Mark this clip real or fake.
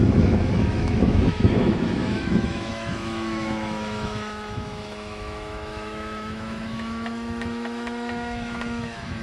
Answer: fake